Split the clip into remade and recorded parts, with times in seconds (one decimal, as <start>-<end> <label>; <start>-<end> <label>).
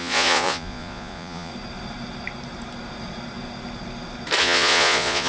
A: 0.0-1.5 remade; 1.5-4.4 recorded; 4.4-5.3 remade